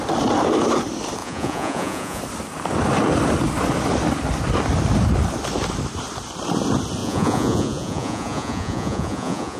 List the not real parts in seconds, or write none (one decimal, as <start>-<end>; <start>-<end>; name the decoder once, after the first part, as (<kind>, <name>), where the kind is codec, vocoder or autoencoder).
1.2-2.2 (vocoder, Vocos); 7.0-9.6